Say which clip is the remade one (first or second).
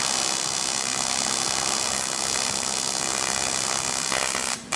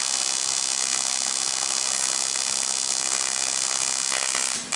first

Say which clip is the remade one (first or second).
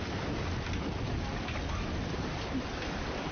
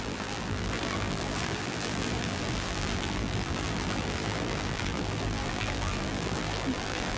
second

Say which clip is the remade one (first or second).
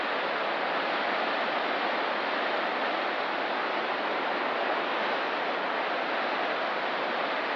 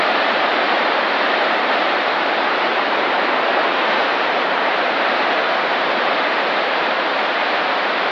second